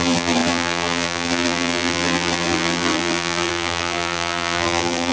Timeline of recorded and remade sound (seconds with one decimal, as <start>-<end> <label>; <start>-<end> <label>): 0.0-5.1 remade